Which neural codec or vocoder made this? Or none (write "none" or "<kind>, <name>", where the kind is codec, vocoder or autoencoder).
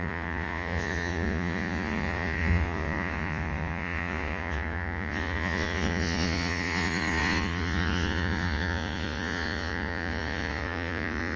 vocoder, Vocos